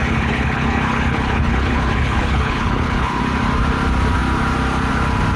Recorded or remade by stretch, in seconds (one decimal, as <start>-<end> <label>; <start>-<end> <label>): 0.0-3.2 remade; 3.2-5.4 recorded